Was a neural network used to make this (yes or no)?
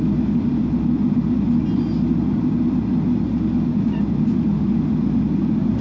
no